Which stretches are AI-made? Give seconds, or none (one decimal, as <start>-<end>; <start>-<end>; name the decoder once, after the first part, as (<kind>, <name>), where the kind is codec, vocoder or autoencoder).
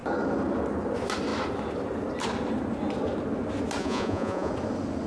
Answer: 3.8-4.5 (vocoder, Vocos)